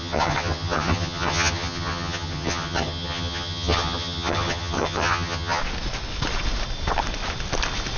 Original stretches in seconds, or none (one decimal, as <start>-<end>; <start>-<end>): 5.6-8.0